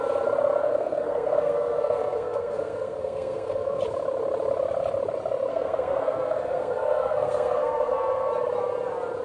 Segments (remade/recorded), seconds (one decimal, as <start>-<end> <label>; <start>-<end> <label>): 0.0-0.6 recorded; 0.6-3.8 remade; 3.8-5.5 recorded; 5.5-8.3 remade; 8.3-9.2 recorded